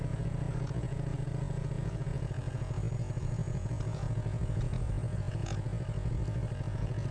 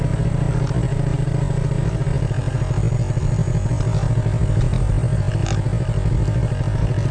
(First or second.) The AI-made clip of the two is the first